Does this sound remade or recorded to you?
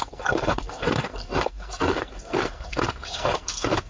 remade